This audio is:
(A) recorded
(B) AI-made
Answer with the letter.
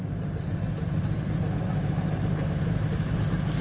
A